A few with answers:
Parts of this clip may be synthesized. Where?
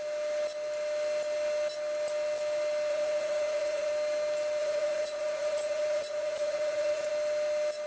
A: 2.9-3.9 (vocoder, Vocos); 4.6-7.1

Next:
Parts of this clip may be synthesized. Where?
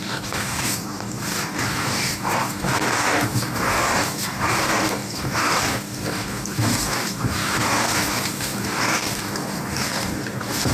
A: 0.0-10.7 (codec, DAC)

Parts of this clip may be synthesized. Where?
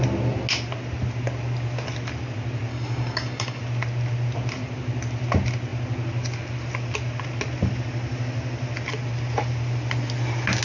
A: 2.7-3.6 (codec, DAC)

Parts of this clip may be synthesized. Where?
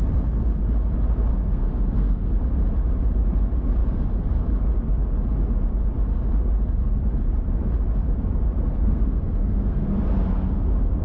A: 1.3-2.3 (codec, SNAC); 8.7-9.8